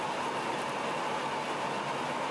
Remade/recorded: recorded